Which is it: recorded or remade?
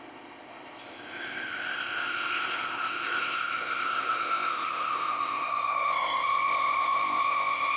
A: remade